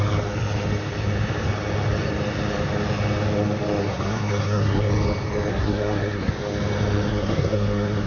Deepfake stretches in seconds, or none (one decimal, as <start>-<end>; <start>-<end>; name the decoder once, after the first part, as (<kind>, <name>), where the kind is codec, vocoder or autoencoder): 3.8-4.9 (codec, SNAC); 5.5-6.3; 7.1-8.1